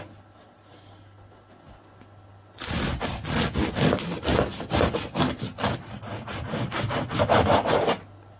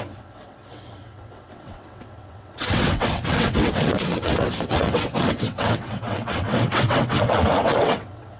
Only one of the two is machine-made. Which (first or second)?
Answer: second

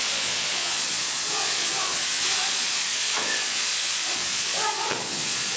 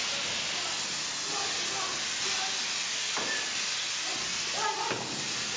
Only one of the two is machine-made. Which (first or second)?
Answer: first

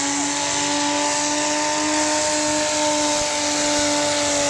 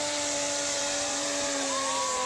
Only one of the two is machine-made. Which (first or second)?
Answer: second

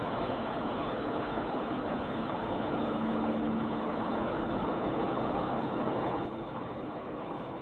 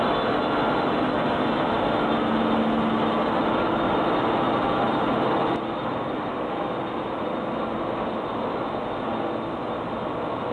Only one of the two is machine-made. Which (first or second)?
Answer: first